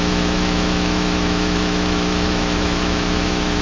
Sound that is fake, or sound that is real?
fake